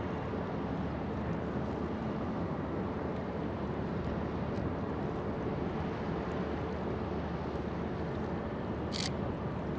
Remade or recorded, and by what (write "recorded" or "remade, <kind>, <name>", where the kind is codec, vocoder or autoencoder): recorded